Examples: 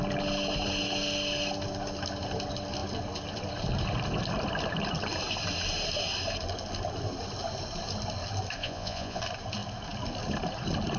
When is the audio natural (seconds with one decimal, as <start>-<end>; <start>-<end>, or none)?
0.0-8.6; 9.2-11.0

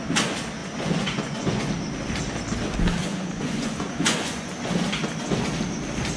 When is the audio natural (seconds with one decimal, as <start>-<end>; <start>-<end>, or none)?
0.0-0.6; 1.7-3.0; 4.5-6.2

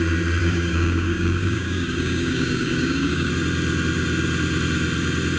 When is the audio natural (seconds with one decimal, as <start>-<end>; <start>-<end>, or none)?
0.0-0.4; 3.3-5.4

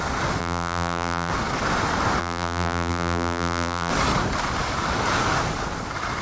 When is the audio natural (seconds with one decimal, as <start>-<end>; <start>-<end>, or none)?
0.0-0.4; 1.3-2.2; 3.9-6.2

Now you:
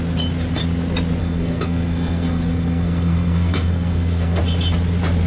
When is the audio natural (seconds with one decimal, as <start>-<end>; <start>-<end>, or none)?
0.0-1.2; 4.4-5.3